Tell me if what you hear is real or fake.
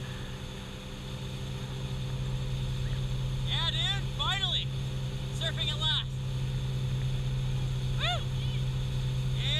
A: real